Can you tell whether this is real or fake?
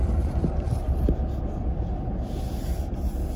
real